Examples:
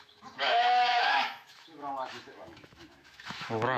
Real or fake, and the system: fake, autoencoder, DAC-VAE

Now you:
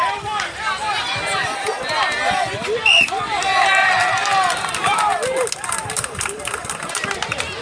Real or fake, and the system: real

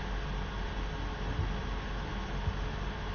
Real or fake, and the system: real